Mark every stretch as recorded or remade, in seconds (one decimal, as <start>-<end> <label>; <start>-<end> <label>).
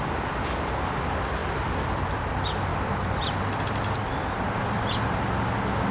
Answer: 0.0-1.4 recorded; 1.4-2.3 remade; 2.3-2.7 recorded; 2.7-3.5 remade; 3.5-5.9 recorded